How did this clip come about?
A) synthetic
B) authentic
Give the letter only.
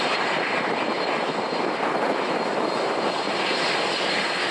B